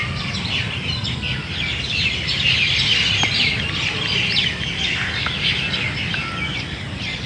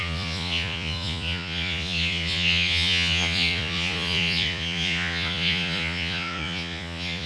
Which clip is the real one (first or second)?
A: first